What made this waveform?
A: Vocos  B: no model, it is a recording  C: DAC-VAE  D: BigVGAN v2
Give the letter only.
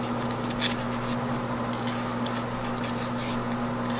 B